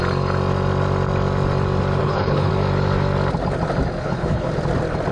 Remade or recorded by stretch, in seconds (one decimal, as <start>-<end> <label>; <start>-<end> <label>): 0.0-2.0 recorded; 2.0-2.5 remade; 2.5-4.0 recorded; 4.0-4.5 remade; 4.5-5.1 recorded

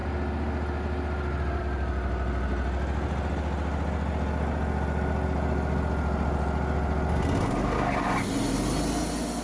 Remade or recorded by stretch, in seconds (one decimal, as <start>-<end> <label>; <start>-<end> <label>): 0.0-9.4 recorded

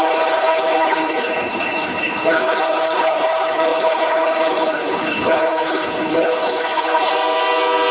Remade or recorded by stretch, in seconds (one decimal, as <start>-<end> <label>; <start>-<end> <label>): 0.0-7.1 remade; 7.1-7.9 recorded

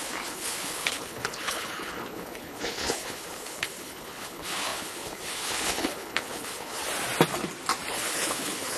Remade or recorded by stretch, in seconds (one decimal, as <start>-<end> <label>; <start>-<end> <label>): 0.0-6.8 remade; 6.8-7.9 recorded; 7.9-8.8 remade

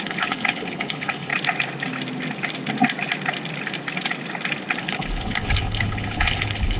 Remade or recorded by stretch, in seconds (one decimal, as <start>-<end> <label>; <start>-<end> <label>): 0.0-1.3 remade; 1.3-4.8 recorded; 4.8-6.8 remade

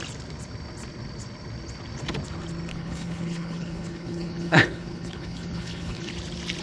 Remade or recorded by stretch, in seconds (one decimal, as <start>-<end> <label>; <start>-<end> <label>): 0.0-2.7 recorded; 2.7-6.1 remade; 6.1-6.6 recorded